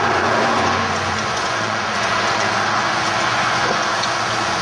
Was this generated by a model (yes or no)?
yes